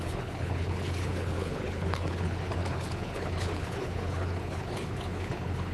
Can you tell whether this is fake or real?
fake